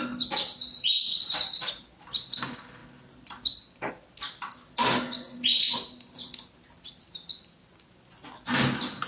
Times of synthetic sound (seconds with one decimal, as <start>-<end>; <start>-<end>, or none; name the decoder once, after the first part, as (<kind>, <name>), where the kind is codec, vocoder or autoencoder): none